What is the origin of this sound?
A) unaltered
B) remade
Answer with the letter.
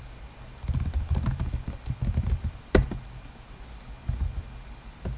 A